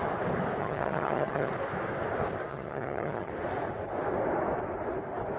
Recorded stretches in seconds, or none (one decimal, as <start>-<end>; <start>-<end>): 0.0-0.6; 1.5-2.5; 3.3-5.4